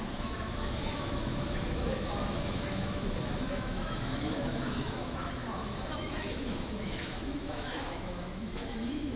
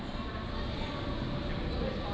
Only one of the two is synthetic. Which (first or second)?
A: first